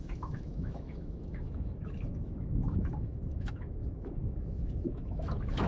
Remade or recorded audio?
remade